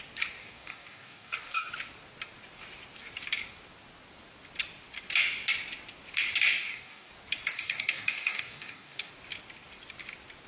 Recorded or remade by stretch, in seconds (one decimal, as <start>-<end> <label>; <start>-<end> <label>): 0.0-0.4 recorded; 0.4-1.7 remade; 1.7-6.5 recorded; 6.5-7.1 remade; 7.1-7.5 recorded; 7.5-9.1 remade; 9.1-10.5 recorded